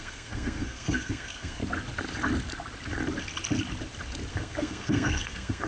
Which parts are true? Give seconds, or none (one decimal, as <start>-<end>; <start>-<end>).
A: 1.6-4.3